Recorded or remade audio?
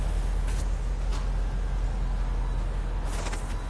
recorded